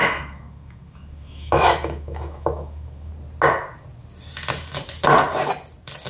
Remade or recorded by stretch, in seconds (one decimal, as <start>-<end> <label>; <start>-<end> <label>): 0.0-3.1 remade; 3.1-6.1 recorded